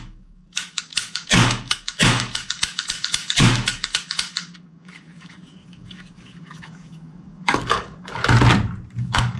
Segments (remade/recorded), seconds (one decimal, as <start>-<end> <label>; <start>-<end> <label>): 0.0-8.2 remade; 8.2-9.0 recorded; 9.0-9.4 remade